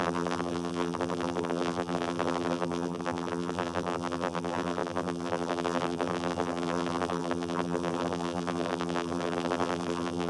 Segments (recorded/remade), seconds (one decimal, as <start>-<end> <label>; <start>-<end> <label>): 0.0-10.3 remade